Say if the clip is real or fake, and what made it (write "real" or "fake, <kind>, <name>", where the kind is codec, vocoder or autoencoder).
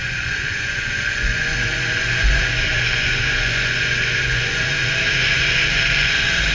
fake, vocoder, Vocos